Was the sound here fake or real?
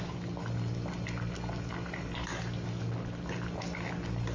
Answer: real